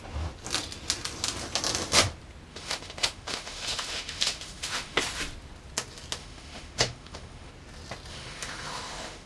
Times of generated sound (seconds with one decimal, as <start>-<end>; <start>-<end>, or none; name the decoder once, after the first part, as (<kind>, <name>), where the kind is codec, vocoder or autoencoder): 2.5-5.0 (autoencoder, DAC-VAE); 6.2-7.5; 8.1-9.3